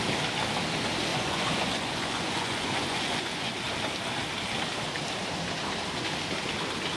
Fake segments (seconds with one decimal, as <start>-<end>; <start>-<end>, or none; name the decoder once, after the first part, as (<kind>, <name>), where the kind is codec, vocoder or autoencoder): 1.1-3.5 (vocoder, Vocos)